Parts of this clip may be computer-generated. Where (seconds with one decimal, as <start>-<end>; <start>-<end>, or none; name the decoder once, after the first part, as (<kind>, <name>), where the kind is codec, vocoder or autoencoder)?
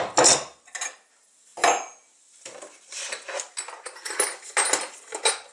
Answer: none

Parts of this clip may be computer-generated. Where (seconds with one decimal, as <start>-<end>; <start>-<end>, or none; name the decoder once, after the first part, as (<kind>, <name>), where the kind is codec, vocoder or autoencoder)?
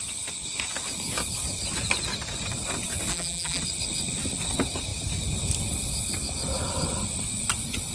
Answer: 3.1-3.6 (vocoder, BigVGAN v2)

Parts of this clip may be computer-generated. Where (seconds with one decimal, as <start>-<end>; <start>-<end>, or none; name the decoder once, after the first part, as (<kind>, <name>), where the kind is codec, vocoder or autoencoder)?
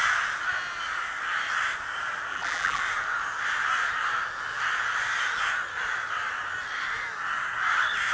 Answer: 2.3-2.8 (vocoder, BigVGAN v2)